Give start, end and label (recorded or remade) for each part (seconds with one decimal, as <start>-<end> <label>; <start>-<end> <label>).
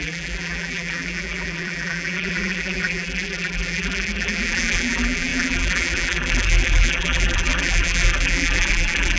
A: 0.0-9.2 remade